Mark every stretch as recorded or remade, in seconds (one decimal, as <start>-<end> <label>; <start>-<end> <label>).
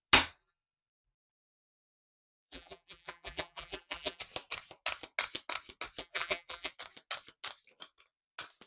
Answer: 0.0-0.4 recorded; 0.4-4.2 remade; 4.2-6.0 recorded; 6.0-6.7 remade; 6.7-8.7 recorded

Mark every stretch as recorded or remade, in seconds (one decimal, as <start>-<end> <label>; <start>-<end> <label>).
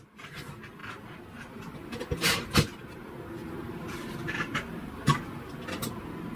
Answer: 0.0-0.8 recorded; 0.8-2.4 remade; 2.4-3.4 recorded; 3.4-5.5 remade; 5.5-6.4 recorded